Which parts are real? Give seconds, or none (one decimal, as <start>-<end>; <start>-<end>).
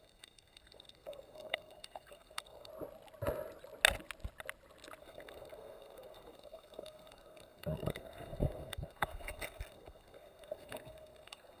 2.7-5.0